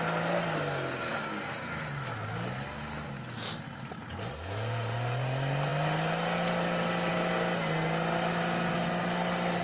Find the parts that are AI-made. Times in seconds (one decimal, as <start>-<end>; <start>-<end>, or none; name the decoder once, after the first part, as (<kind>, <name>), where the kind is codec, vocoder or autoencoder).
none